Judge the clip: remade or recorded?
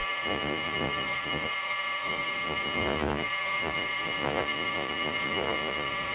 remade